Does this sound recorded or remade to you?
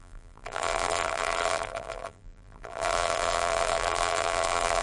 remade